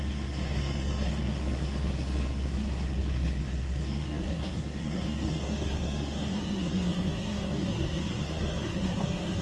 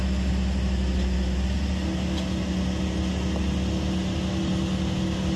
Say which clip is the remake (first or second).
first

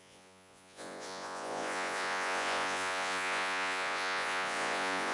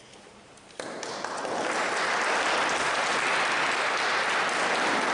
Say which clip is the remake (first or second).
first